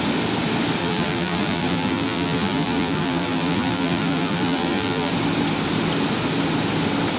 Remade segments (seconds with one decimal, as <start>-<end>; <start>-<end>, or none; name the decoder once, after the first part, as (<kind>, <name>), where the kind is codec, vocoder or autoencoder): 0.8-5.1 (vocoder, BigVGAN v2)